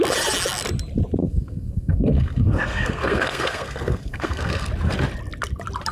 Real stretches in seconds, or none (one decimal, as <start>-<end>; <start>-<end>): 0.0-1.2; 4.7-5.9